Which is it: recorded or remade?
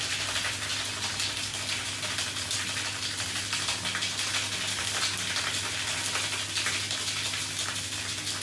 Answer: recorded